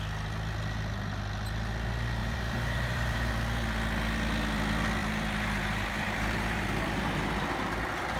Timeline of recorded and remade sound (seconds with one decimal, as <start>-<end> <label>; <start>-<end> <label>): 0.0-2.2 recorded; 2.2-3.3 remade; 3.3-5.0 recorded; 5.0-7.3 remade; 7.3-8.2 recorded